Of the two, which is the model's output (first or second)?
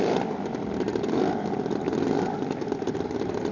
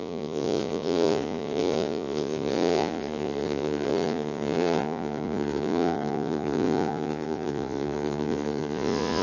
second